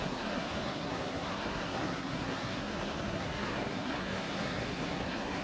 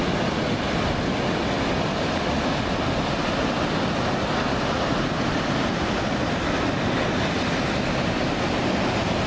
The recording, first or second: second